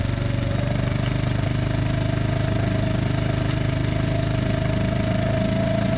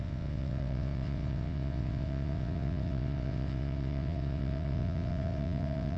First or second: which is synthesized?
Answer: second